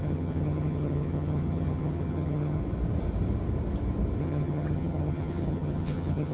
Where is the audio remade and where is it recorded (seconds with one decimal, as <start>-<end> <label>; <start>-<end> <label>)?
0.0-2.6 remade; 2.6-4.2 recorded; 4.2-6.3 remade